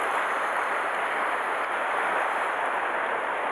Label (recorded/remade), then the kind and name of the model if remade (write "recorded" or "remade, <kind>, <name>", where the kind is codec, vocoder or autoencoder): recorded